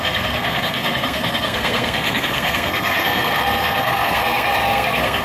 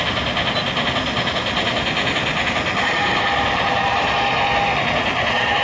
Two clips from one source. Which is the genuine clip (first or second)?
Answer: second